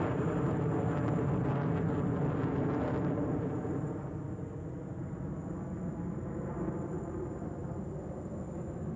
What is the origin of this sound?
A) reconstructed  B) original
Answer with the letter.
B